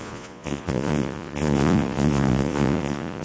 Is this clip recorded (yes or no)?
no